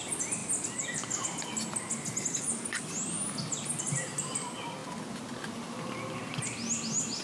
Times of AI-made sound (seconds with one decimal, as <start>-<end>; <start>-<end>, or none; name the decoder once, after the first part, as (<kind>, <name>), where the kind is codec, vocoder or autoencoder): none

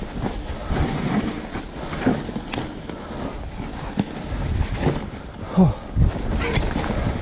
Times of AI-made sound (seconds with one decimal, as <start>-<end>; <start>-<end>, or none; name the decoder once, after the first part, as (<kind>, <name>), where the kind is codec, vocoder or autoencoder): 0.6-1.2 (vocoder, BigVGAN v2)

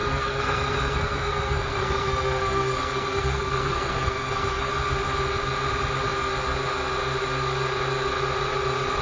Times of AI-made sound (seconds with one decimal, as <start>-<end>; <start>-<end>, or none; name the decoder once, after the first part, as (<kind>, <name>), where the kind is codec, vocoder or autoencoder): 0.0-4.7 (codec, SNAC)

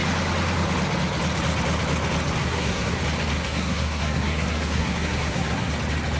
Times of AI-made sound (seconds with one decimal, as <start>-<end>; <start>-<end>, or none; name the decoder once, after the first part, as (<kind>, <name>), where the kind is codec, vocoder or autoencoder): 2.4-3.0 (codec, SNAC); 3.4-5.7

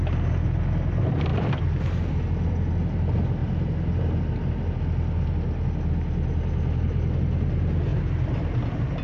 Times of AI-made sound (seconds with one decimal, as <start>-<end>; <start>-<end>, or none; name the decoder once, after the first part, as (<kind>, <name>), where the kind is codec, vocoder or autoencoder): none

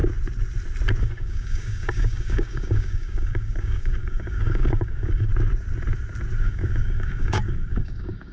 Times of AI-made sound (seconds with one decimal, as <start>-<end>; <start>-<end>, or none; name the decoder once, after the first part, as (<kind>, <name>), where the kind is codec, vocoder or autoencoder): 1.0-5.3 (codec, DAC); 6.4-8.3

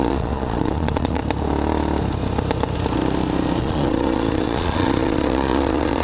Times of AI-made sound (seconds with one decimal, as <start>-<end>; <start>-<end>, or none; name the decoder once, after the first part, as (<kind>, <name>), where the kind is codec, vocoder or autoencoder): 0.0-1.2 (vocoder, Vocos); 3.6-6.0